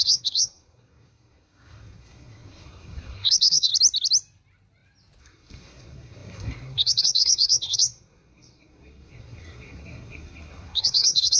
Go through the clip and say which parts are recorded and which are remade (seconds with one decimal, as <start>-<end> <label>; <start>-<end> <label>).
0.0-3.7 remade; 3.7-5.2 recorded; 5.2-11.4 remade